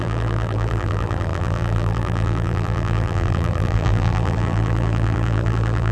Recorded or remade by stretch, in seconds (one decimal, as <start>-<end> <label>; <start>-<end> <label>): 0.0-5.9 remade